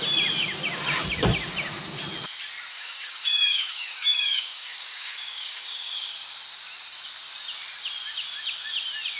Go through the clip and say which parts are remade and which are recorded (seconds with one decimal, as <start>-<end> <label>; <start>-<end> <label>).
0.0-2.7 recorded; 2.7-6.1 remade; 6.1-9.2 recorded